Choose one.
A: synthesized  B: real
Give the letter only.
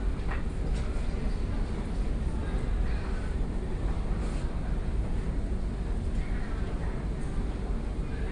B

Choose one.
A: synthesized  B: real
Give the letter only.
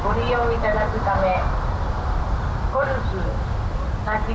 B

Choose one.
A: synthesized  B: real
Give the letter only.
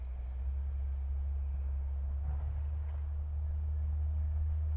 B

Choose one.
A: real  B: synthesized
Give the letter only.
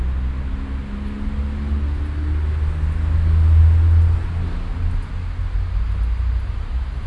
A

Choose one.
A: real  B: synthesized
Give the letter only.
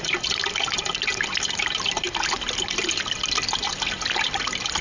A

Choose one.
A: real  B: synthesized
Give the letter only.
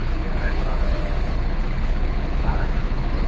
B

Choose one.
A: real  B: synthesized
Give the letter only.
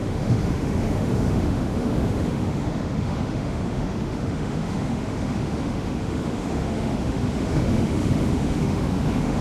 B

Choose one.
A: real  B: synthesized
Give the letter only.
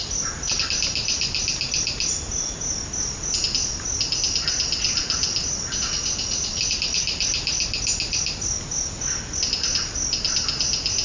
A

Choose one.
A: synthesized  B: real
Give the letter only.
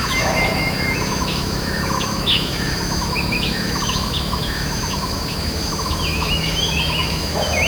A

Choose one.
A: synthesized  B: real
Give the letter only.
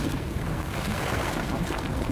A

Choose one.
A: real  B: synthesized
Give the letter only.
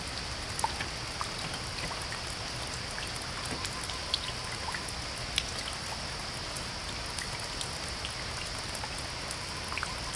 A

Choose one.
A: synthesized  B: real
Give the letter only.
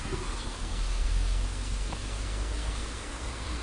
A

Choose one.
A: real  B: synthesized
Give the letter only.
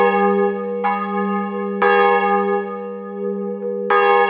A